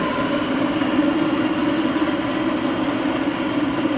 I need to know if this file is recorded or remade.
recorded